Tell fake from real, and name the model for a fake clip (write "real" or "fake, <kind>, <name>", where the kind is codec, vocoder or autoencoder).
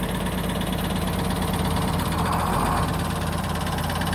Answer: real